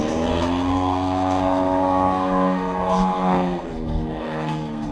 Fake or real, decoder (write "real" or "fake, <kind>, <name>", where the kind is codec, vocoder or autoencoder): fake, codec, SNAC